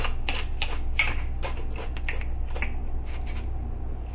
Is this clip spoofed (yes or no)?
no